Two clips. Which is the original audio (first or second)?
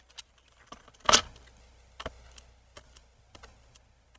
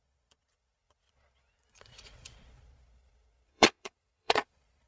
first